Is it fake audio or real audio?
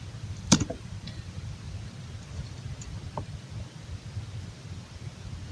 real